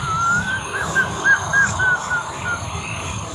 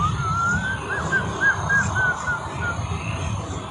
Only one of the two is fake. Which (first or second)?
first